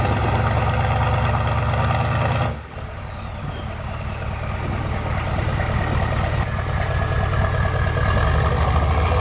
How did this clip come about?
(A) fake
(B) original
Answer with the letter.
B